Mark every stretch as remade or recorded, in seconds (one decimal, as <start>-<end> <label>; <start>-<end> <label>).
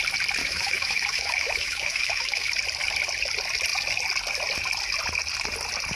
0.0-0.4 recorded; 0.4-2.5 remade; 2.5-5.9 recorded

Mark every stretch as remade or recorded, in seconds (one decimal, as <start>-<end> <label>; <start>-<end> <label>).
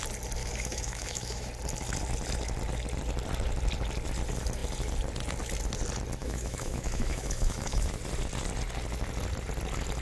0.0-0.4 recorded; 0.4-1.5 remade; 1.5-6.2 recorded; 6.2-8.0 remade; 8.0-10.0 recorded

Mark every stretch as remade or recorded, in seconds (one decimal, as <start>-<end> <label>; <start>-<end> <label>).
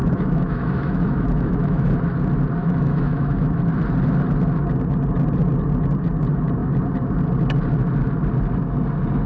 0.0-1.9 remade; 1.9-2.6 recorded; 2.6-3.6 remade; 3.6-9.3 recorded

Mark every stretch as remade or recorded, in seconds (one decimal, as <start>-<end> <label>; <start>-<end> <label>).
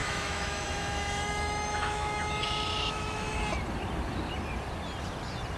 0.0-3.4 remade; 3.4-5.6 recorded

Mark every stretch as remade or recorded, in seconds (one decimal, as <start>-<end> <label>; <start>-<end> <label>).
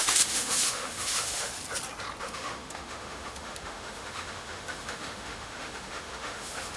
0.0-1.5 remade; 1.5-2.2 recorded; 2.2-6.8 remade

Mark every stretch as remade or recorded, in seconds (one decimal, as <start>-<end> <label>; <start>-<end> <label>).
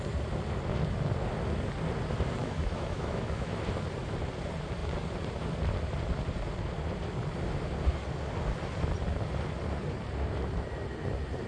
0.0-2.4 recorded; 2.4-3.6 remade; 3.6-11.5 recorded